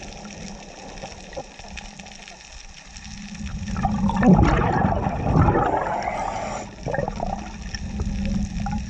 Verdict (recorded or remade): recorded